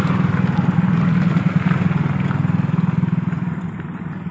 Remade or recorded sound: recorded